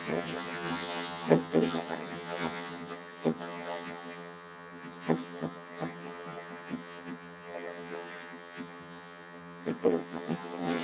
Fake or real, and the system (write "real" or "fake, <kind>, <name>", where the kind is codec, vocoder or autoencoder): fake, vocoder, HiFi-GAN